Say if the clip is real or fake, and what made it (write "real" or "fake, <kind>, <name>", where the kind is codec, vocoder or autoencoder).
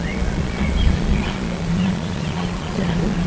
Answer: fake, vocoder, Vocos